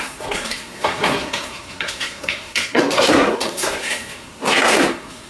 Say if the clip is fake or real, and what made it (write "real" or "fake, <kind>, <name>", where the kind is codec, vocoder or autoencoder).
fake, codec, SNAC